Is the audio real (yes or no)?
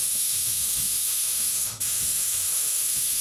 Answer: no